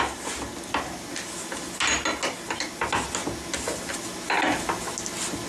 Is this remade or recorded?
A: recorded